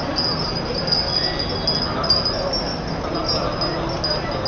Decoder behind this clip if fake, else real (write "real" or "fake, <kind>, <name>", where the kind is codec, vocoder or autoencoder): real